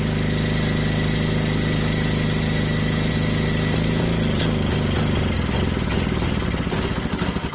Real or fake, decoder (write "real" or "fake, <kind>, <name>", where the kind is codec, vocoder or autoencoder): real